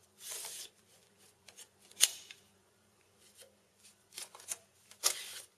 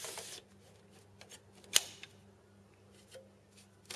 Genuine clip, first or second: second